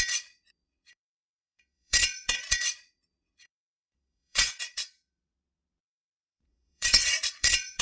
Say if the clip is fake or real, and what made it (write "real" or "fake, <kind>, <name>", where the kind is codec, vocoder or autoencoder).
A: fake, vocoder, Vocos